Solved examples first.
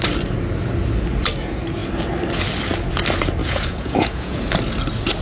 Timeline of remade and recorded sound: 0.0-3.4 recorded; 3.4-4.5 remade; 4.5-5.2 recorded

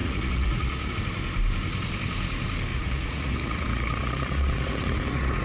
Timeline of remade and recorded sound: 0.0-0.9 remade; 0.9-2.7 recorded; 2.7-5.4 remade

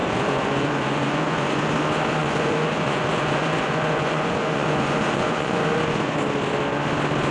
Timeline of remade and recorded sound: 0.0-1.7 remade; 1.7-2.2 recorded; 2.2-6.2 remade; 6.2-7.3 recorded

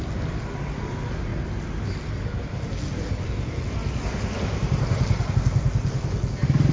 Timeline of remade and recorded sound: 0.0-6.7 recorded

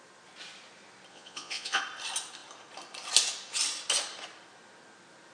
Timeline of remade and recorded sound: 0.0-1.1 recorded; 1.1-1.8 remade; 1.8-5.3 recorded

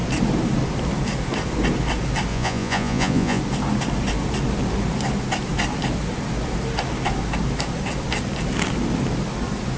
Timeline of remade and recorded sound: 0.0-2.3 recorded; 2.3-3.4 remade; 3.4-9.8 recorded

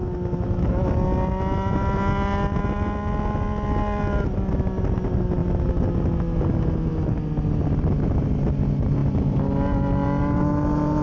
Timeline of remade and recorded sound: 0.0-11.0 recorded